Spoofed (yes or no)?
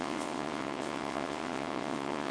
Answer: yes